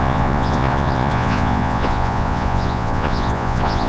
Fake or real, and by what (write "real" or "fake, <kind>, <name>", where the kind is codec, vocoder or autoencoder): fake, vocoder, Vocos